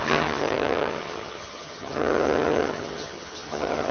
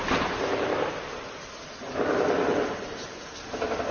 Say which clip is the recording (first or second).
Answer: second